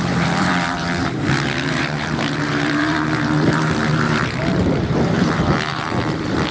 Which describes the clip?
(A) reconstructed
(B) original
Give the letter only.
A